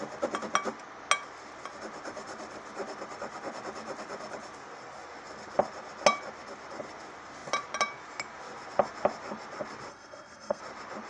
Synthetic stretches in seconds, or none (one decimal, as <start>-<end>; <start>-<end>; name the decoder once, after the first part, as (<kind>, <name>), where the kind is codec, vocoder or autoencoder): 9.9-10.6 (codec, SNAC)